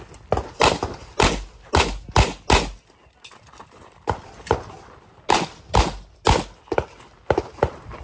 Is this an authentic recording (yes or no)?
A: yes